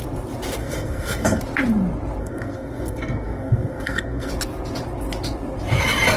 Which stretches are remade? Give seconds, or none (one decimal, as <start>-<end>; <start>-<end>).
0.6-1.4; 2.2-4.3

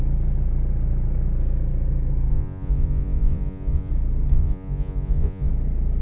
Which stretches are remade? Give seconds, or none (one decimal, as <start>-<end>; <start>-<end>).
2.3-3.9; 4.3-5.5

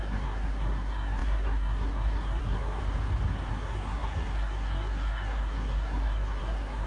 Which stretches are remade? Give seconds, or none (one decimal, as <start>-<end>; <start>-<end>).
0.0-2.8; 3.5-6.9

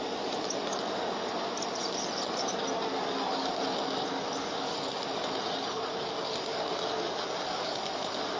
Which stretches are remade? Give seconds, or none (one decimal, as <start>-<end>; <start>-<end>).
none

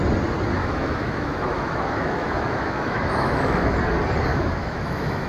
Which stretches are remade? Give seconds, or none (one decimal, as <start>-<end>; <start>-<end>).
0.6-3.8; 4.3-5.3

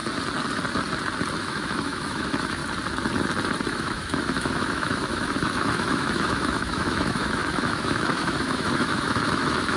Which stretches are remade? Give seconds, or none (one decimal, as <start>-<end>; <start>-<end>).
1.4-2.6; 3.7-9.8